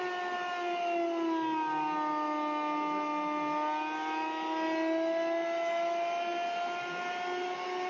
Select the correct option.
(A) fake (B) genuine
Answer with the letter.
B